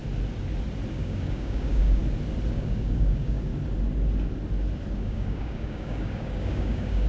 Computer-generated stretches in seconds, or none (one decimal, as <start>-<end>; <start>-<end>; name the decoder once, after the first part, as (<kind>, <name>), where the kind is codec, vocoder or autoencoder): 0.9-2.0 (codec, DAC); 2.5-3.5; 4.9-7.1